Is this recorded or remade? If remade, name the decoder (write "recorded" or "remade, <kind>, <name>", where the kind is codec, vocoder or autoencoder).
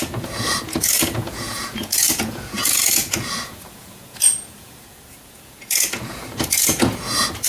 remade, vocoder, Vocos